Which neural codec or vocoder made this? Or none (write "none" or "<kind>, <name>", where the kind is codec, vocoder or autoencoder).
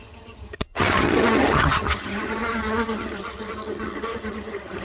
vocoder, HiFi-GAN